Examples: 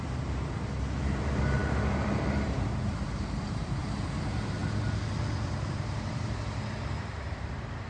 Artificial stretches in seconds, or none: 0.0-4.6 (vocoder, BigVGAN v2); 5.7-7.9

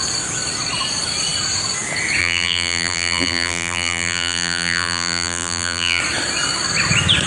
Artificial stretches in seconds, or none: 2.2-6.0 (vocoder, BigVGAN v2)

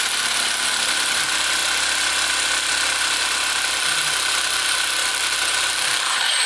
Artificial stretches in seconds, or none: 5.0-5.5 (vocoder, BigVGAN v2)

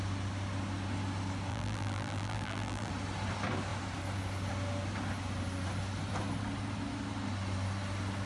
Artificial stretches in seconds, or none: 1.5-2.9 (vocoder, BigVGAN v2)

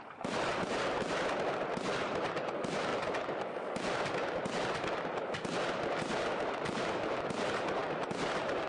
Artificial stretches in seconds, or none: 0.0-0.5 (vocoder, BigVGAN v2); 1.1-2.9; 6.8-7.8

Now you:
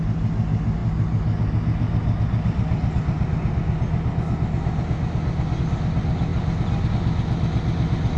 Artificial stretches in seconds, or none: none